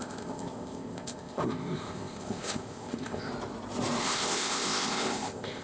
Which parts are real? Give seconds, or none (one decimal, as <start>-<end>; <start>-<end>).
3.3-4.0

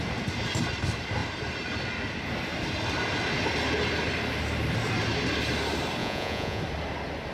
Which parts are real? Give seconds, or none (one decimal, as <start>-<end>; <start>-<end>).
0.0-6.0; 6.6-7.3

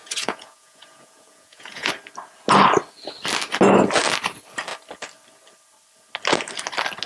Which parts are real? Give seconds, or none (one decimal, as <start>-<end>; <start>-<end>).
1.9-7.1

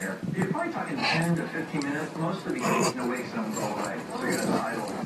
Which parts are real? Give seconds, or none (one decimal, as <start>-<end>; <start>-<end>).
1.0-3.0

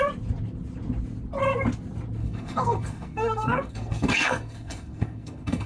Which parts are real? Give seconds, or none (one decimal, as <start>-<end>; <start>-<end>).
0.0-2.2

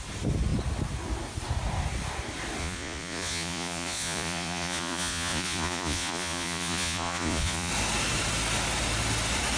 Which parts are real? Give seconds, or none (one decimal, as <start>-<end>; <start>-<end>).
0.0-2.6; 7.7-9.6

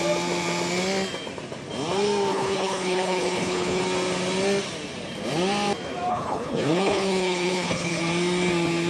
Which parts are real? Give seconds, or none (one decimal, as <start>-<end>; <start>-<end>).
0.0-2.3; 3.8-6.1; 8.0-8.9

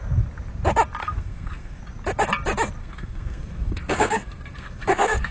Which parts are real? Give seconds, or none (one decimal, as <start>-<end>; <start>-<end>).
0.0-1.0; 1.8-2.8